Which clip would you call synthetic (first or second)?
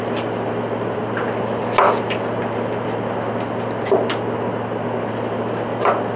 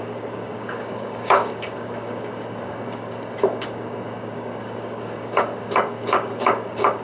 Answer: second